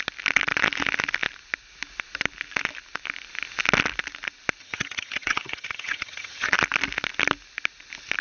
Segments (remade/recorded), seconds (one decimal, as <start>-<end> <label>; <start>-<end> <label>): 0.0-4.6 recorded; 4.6-6.5 remade; 6.5-8.2 recorded